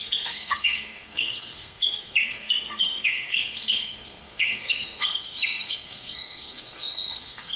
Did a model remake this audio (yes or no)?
yes